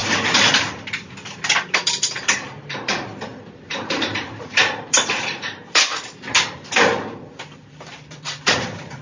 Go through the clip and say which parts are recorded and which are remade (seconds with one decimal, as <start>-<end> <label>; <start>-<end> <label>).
0.0-0.9 recorded; 0.9-9.0 remade